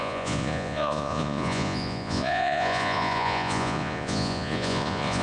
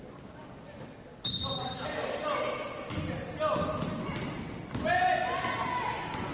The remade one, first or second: first